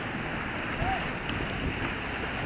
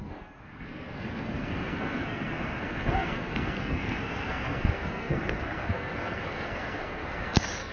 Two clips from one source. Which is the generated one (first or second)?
second